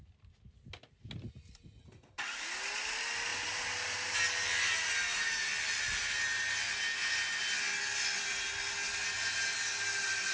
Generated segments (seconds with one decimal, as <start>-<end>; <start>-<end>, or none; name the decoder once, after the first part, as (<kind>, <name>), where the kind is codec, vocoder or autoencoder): none